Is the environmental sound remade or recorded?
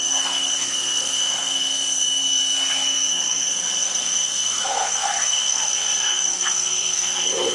remade